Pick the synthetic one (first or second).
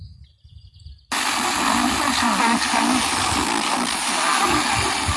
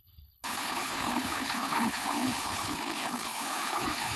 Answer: second